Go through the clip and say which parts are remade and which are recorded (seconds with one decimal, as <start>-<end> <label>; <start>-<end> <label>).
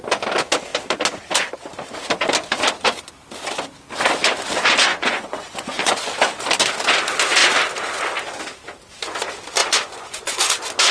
0.0-4.9 recorded; 4.9-6.1 remade; 6.1-9.6 recorded; 9.6-10.5 remade; 10.5-10.9 recorded